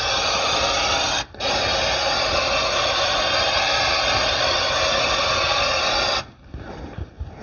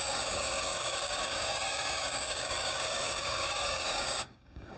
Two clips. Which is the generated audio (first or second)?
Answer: second